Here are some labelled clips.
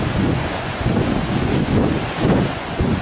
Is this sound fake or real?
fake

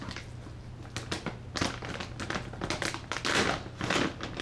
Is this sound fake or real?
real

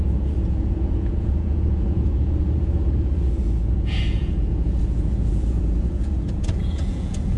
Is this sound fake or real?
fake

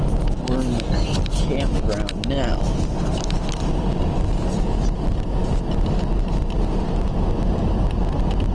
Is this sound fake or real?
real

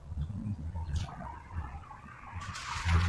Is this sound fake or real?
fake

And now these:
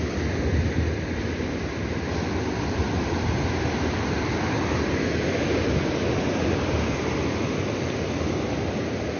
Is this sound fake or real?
real